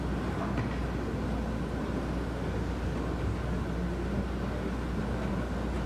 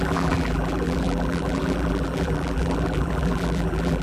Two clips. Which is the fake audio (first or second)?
second